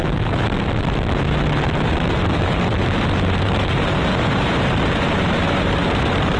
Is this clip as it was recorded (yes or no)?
no